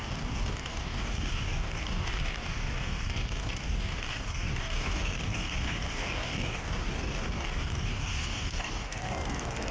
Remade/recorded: remade